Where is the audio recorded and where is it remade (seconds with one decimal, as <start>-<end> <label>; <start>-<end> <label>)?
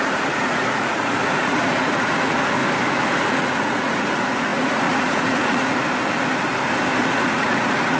0.0-2.6 remade; 2.6-3.2 recorded; 3.2-5.8 remade; 5.8-7.0 recorded; 7.0-8.0 remade